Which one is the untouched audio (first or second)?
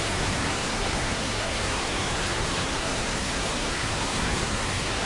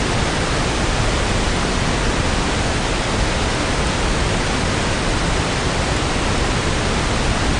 second